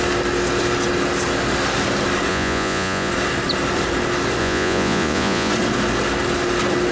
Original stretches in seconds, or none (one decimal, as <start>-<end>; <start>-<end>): 0.0-2.3; 3.1-4.4; 5.5-6.9